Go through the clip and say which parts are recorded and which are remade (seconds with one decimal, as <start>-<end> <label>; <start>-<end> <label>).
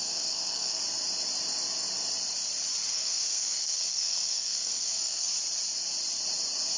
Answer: 0.0-0.8 remade; 0.8-2.9 recorded; 2.9-5.3 remade; 5.3-6.8 recorded